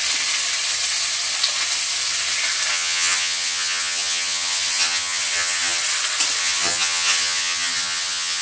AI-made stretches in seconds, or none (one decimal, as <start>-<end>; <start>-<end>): 2.7-5.8; 6.4-8.4